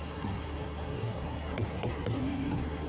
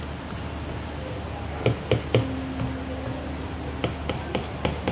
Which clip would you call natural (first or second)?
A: second